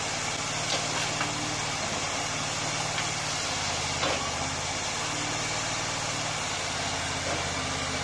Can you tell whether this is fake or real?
real